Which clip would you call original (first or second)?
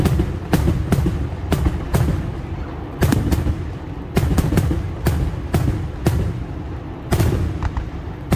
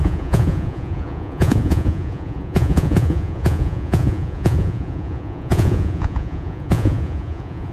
first